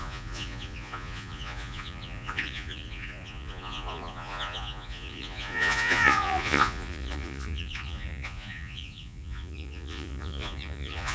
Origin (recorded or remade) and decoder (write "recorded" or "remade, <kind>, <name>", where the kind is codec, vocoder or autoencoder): remade, vocoder, Vocos